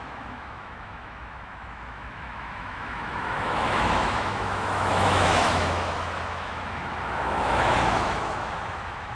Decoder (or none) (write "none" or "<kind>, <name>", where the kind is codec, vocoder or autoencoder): autoencoder, DAC-VAE